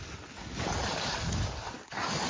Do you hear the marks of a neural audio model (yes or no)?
no